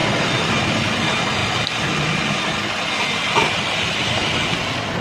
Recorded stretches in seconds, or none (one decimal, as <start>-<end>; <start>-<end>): 0.5-1.4; 4.4-5.0